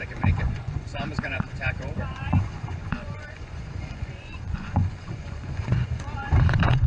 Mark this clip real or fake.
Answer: fake